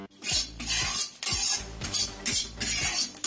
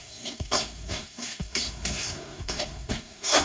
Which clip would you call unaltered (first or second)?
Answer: first